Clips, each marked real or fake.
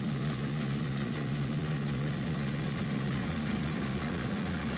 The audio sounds fake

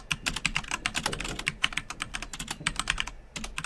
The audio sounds real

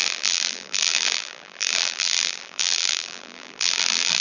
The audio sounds fake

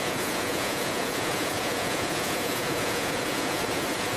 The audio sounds fake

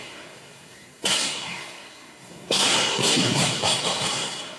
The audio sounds fake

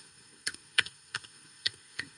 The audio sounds fake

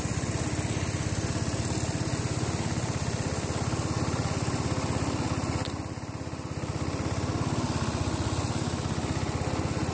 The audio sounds real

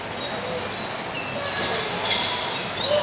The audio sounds real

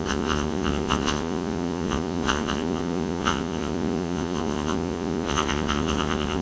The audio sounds fake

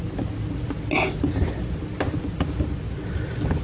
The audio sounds real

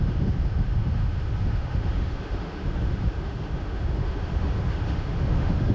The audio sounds fake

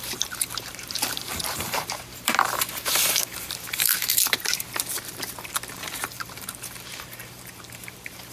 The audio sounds fake